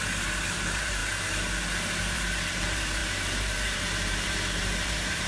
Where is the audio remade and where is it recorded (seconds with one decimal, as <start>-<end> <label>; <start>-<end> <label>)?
0.0-1.0 remade; 1.0-2.0 recorded; 2.0-5.3 remade